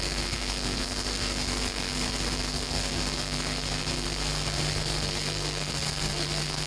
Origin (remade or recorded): remade